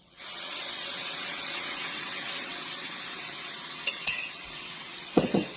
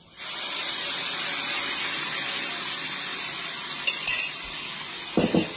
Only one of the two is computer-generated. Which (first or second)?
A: first